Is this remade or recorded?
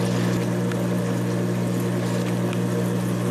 recorded